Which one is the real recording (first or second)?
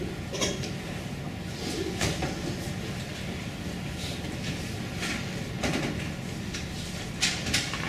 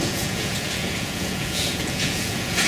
first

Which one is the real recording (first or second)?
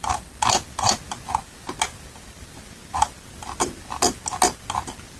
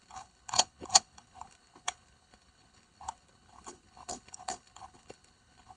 first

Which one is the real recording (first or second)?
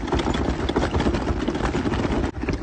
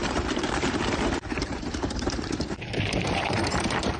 first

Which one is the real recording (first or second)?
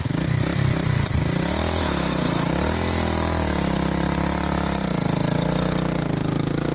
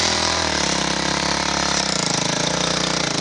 first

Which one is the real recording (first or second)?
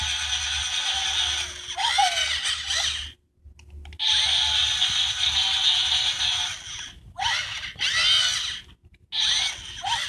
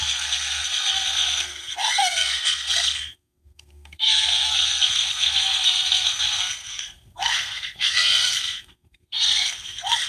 first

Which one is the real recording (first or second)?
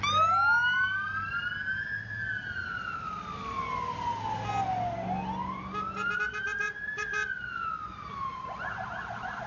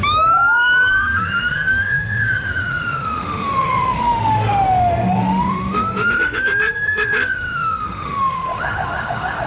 first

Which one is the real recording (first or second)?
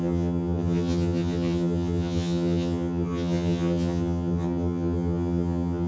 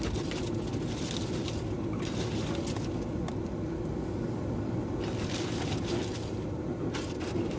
second